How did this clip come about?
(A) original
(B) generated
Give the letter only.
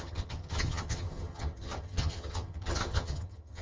B